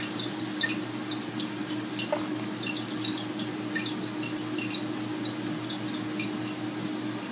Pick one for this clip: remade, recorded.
recorded